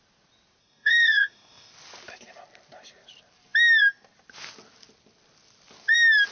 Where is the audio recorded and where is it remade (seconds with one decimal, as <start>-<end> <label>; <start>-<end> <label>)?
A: 0.0-0.6 recorded; 0.6-1.7 remade; 1.7-6.3 recorded